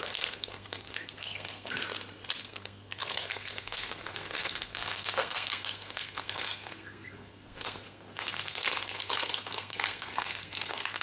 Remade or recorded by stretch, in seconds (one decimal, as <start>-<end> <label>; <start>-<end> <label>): 0.0-1.8 remade; 1.8-2.4 recorded; 2.4-11.0 remade